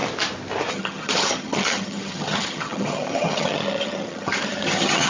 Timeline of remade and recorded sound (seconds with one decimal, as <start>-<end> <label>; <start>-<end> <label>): 0.0-0.7 recorded; 0.7-5.1 remade